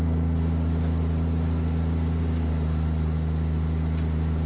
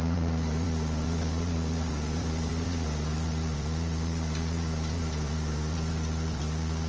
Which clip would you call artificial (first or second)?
second